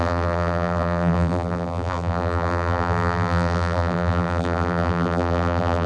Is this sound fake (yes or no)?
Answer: yes